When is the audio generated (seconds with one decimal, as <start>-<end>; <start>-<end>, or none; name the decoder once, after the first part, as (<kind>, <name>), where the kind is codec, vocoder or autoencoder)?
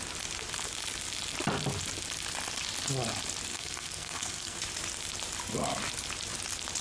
3.5-4.6 (codec, SNAC)